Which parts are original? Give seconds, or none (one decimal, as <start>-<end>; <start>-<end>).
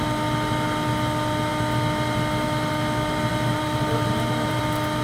0.0-3.3; 4.6-5.0